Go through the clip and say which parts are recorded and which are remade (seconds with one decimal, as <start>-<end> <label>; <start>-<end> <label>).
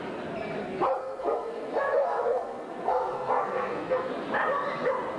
0.0-1.0 recorded; 1.0-4.1 remade; 4.1-5.2 recorded